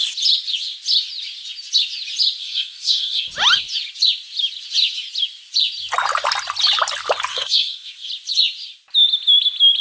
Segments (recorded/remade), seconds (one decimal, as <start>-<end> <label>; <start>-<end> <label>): 0.0-2.4 recorded; 2.4-3.3 remade; 3.3-7.3 recorded; 7.3-8.1 remade; 8.1-9.8 recorded